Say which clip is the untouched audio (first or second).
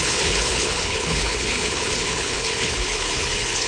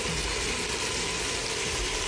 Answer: second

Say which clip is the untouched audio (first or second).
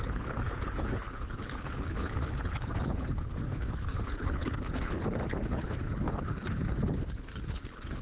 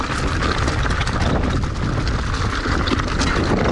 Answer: second